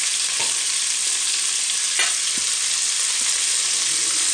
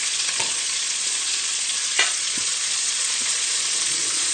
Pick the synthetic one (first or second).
second